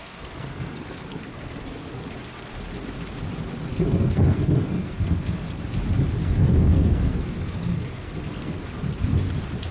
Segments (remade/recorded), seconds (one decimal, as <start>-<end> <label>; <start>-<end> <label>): 0.0-1.9 remade; 1.9-3.7 recorded; 3.7-5.6 remade; 5.6-6.2 recorded; 6.2-8.6 remade; 8.6-9.7 recorded